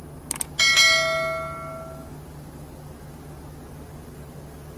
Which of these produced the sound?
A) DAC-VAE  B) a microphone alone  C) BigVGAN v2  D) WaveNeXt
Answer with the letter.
B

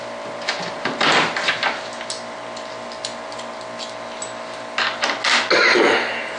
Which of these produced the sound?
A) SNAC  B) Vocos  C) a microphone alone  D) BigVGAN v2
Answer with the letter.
C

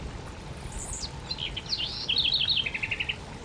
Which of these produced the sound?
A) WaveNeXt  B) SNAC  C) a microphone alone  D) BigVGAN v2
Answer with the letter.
C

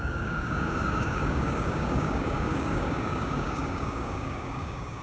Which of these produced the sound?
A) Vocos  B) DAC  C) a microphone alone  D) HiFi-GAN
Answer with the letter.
B